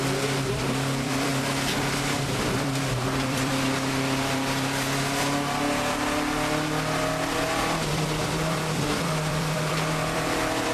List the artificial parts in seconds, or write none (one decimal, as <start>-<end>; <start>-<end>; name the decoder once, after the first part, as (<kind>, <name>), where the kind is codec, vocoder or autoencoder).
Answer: 0.0-1.3 (vocoder, BigVGAN v2); 2.0-3.5; 7.9-10.7